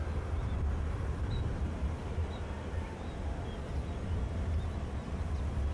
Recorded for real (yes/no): yes